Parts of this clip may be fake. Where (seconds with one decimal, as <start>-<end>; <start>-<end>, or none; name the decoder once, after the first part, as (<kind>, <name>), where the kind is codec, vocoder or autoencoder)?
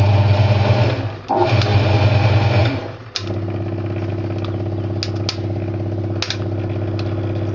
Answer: none